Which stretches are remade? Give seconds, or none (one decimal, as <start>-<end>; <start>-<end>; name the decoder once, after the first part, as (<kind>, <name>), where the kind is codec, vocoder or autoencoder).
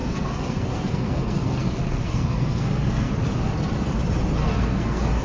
0.0-3.1 (codec, SNAC); 4.4-5.2